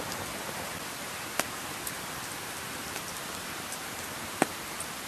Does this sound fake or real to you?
real